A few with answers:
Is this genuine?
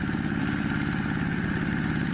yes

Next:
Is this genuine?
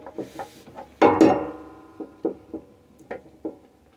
yes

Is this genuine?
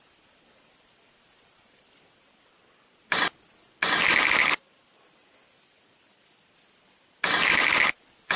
yes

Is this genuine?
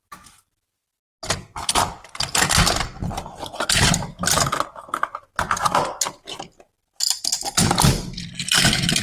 yes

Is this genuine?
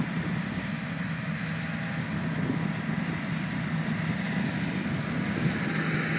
yes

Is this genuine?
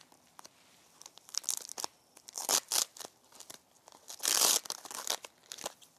yes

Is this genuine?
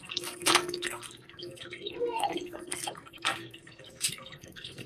no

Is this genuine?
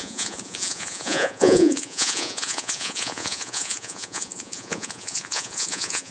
no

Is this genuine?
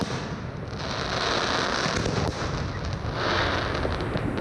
yes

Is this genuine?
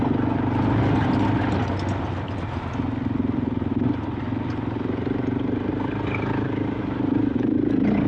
yes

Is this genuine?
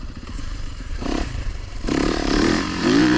no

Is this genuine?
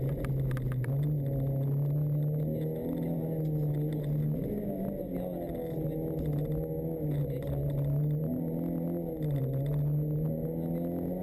yes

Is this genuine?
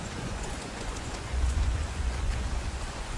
no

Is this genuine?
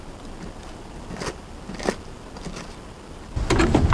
yes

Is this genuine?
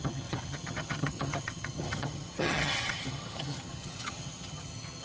no